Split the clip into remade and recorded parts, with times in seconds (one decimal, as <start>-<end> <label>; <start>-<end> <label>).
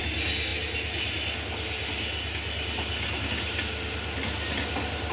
0.0-5.1 recorded